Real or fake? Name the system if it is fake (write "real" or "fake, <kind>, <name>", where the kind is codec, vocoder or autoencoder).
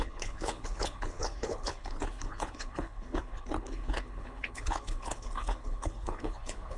fake, codec, HILCodec